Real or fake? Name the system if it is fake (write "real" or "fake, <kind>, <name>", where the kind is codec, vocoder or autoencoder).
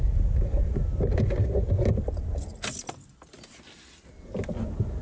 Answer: real